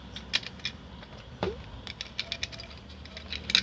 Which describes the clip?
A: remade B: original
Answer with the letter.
B